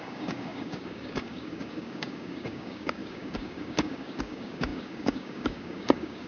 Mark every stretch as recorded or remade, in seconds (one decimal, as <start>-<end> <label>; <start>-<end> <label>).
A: 0.0-6.3 remade